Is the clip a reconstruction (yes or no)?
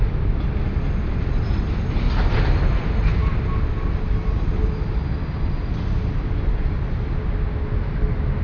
no